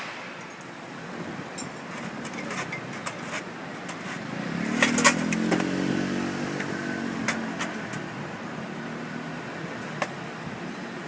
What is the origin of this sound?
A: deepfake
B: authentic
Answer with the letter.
B